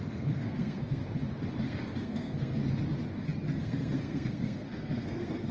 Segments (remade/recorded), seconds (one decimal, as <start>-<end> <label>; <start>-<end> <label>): 0.0-1.0 remade; 1.0-1.6 recorded; 1.6-2.6 remade; 2.6-3.6 recorded; 3.6-5.5 remade